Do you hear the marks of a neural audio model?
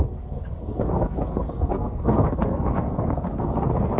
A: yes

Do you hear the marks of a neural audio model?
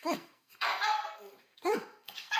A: yes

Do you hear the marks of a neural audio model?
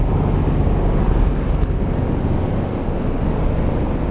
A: no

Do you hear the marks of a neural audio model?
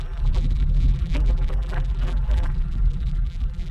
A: yes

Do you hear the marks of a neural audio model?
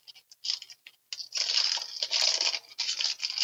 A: no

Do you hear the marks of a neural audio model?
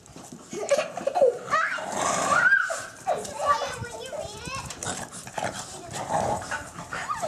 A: yes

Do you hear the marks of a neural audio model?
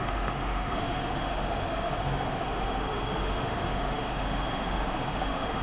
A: yes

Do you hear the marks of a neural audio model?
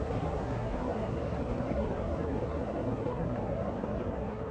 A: yes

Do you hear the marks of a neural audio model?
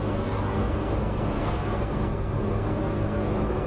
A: yes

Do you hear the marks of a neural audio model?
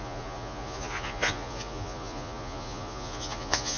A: yes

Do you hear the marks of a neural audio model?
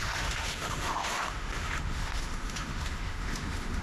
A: yes